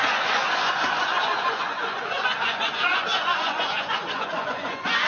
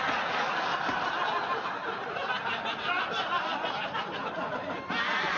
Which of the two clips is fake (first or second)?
first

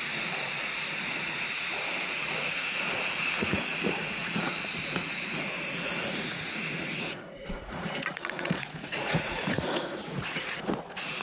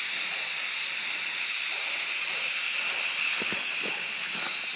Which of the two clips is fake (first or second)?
first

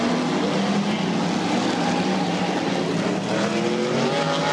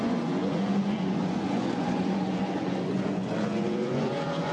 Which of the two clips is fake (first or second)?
second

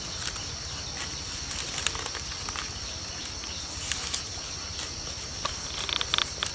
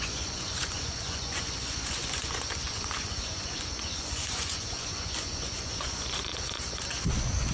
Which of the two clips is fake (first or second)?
second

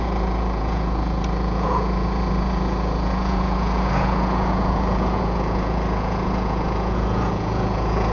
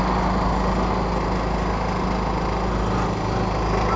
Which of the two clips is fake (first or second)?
first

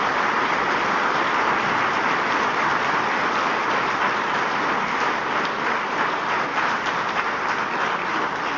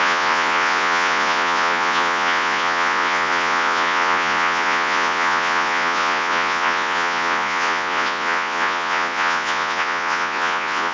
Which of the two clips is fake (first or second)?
second